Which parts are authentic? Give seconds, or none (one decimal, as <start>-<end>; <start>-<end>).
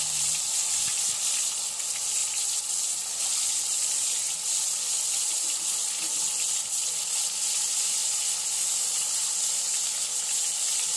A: 0.0-11.0